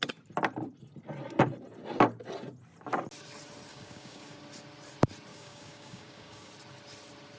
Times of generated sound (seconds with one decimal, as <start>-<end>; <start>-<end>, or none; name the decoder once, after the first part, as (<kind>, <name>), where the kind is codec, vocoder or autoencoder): 3.7-4.4 (codec, DAC); 5.3-6.5